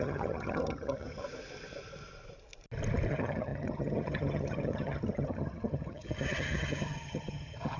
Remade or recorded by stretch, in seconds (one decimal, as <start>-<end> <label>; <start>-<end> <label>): 0.0-1.2 remade; 1.2-3.1 recorded; 3.1-7.8 remade